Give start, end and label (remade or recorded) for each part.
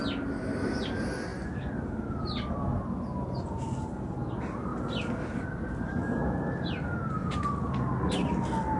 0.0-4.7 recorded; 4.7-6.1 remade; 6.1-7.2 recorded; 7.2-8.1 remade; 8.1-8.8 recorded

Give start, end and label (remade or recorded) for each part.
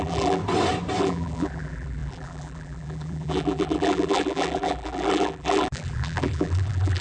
0.0-0.4 remade; 0.4-1.0 recorded; 1.0-7.0 remade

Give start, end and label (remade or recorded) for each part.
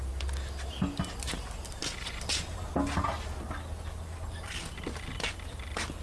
0.0-6.0 recorded